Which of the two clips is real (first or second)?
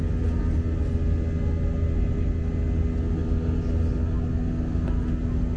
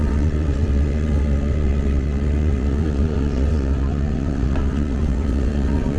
first